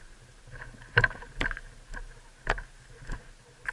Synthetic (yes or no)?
no